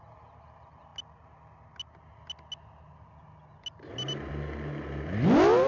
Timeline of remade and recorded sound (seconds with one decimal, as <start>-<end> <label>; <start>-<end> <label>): 0.0-5.7 recorded

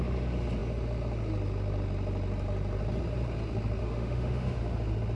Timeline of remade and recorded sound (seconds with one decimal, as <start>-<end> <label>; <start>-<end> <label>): 0.0-3.8 recorded; 3.8-4.6 remade; 4.6-5.2 recorded